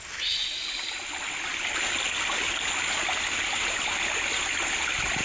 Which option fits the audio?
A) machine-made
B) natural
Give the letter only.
B